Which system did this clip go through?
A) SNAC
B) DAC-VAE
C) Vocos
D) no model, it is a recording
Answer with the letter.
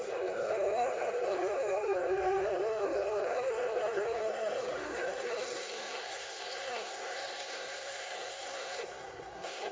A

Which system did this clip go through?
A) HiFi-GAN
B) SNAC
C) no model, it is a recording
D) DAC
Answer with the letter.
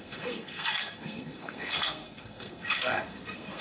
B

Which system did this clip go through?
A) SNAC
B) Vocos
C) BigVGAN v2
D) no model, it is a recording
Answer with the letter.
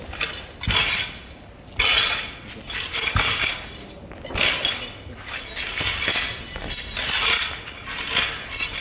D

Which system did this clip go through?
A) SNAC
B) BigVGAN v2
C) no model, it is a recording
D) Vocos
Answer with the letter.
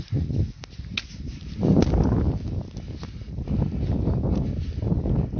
C